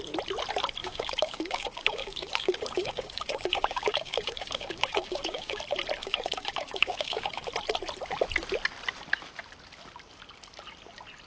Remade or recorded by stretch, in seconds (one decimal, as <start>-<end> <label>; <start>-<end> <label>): 0.0-0.8 recorded; 0.8-5.6 remade; 5.6-6.0 recorded; 6.0-7.5 remade; 7.5-11.3 recorded

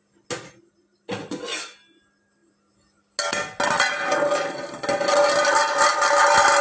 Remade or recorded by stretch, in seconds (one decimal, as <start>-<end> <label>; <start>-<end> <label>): 0.0-6.6 recorded